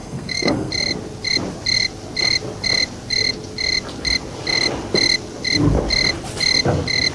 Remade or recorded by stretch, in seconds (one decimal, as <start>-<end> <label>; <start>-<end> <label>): 0.0-0.7 remade; 0.7-7.1 recorded

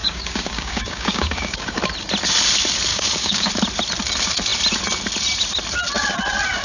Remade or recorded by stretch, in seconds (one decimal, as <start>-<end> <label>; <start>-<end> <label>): 0.0-1.8 remade; 1.8-2.9 recorded; 2.9-3.5 remade; 3.5-6.6 recorded

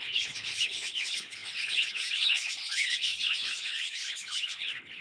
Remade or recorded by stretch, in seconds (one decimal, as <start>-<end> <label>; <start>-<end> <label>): 0.0-5.0 remade